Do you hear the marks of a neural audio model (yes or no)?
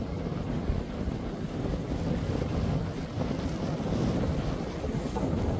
no